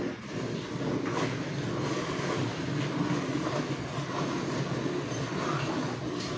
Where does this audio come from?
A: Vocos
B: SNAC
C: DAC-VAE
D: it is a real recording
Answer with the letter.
D